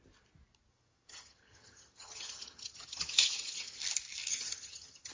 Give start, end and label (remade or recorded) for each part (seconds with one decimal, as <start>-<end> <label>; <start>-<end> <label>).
0.0-0.7 recorded; 0.7-3.8 remade; 3.8-4.3 recorded; 4.3-5.1 remade